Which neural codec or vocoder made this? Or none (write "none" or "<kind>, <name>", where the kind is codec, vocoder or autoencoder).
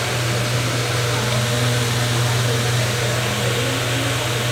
none